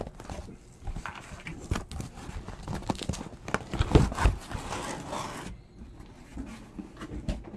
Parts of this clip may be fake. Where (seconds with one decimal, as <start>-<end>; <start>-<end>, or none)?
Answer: none